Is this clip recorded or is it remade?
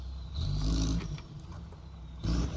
remade